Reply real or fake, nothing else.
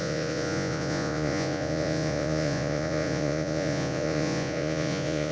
fake